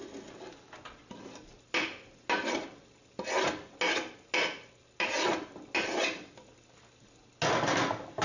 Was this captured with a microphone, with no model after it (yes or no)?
yes